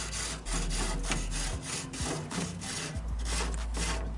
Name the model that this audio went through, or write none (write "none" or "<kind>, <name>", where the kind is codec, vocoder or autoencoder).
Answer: none